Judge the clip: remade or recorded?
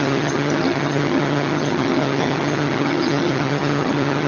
remade